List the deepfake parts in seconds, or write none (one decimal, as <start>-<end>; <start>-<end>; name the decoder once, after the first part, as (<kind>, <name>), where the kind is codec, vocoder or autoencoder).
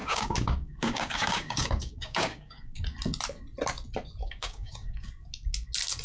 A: 0.0-2.8 (codec, DAC); 4.2-5.1